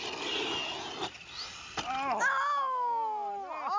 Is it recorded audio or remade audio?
recorded